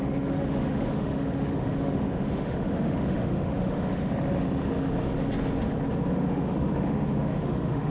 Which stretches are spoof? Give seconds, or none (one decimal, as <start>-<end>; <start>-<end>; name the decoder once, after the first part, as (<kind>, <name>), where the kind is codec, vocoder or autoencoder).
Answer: 0.0-5.1 (autoencoder, DAC-VAE); 6.1-7.9